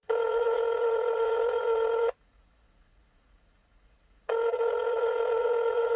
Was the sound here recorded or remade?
remade